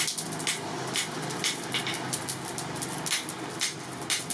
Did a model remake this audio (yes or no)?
no